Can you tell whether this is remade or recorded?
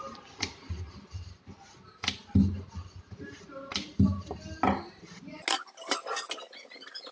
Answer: recorded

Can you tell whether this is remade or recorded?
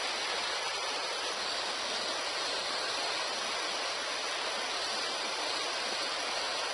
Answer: recorded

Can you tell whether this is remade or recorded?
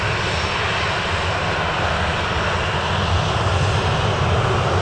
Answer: recorded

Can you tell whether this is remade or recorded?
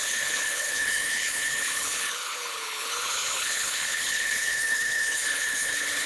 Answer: remade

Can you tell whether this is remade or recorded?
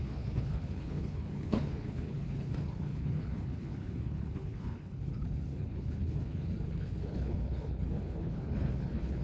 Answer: remade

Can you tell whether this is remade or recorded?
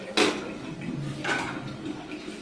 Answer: recorded